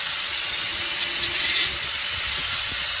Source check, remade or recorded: remade